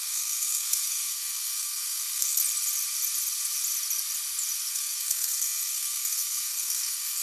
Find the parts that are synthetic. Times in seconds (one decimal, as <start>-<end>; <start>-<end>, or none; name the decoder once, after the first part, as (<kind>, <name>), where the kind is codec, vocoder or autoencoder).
0.0-2.4 (codec, SNAC); 4.7-7.2